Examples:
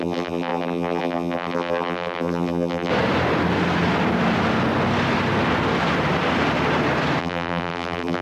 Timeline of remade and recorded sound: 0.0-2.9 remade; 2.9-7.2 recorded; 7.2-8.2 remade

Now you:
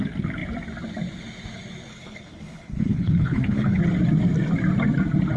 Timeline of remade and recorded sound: 0.0-1.9 recorded; 1.9-3.8 remade; 3.8-5.4 recorded

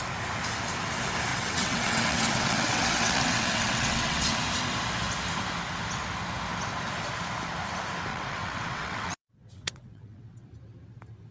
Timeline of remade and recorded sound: 0.0-1.3 recorded; 1.3-4.4 remade; 4.4-8.1 recorded; 8.1-10.5 remade; 10.5-11.3 recorded

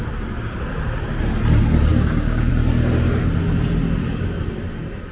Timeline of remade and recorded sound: 0.0-1.9 recorded; 1.9-2.5 remade; 2.5-5.1 recorded